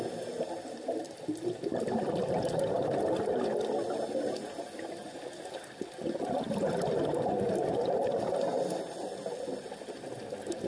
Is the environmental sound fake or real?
real